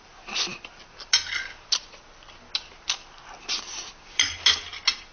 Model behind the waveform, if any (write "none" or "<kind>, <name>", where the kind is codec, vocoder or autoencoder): none